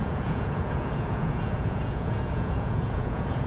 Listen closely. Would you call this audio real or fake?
fake